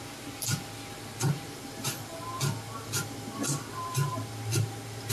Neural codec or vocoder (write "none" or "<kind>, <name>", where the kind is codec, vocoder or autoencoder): none